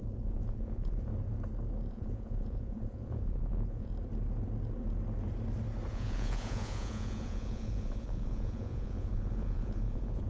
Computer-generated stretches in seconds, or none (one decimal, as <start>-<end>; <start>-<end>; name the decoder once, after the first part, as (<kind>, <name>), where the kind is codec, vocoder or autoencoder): 0.0-1.1 (vocoder, Vocos); 1.9-3.9; 5.9-10.3